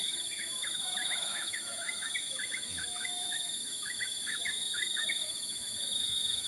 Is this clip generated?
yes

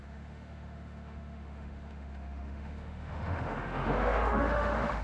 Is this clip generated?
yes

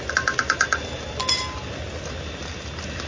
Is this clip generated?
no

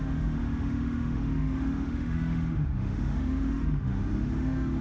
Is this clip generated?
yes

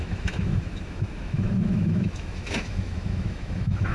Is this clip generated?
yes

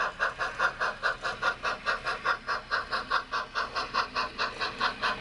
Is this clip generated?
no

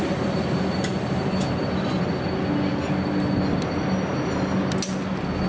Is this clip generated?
no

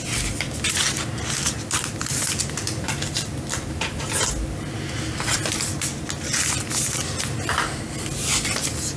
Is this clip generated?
no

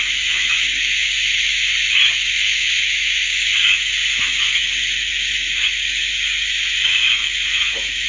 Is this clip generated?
yes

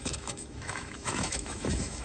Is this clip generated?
yes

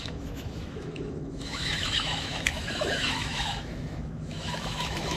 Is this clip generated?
yes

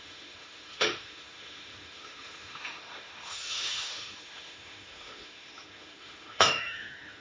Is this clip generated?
yes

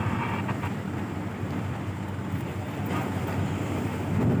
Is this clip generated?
no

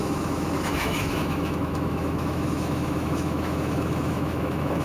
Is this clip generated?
yes